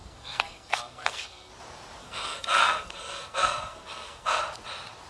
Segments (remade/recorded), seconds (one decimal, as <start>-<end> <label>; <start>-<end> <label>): 0.0-1.5 remade; 1.5-2.0 recorded; 2.0-4.4 remade; 4.4-5.1 recorded